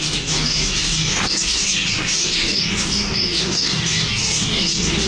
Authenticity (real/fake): fake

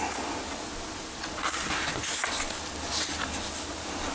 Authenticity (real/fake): real